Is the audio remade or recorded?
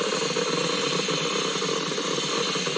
recorded